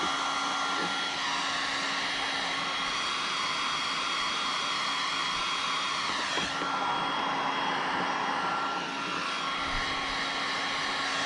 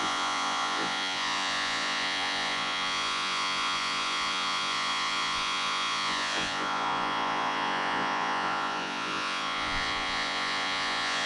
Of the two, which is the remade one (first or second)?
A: second